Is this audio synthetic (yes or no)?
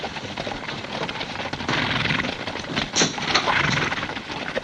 yes